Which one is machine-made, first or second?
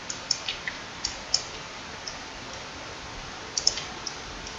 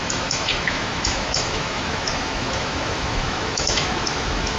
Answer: second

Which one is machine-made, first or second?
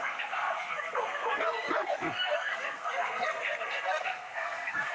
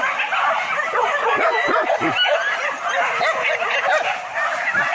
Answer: first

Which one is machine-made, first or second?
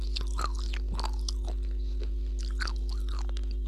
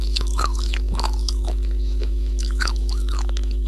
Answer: second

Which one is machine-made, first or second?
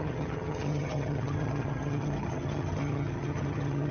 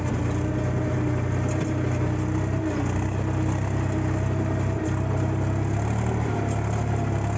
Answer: first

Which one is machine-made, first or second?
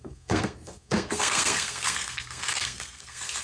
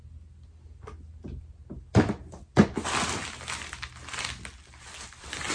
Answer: first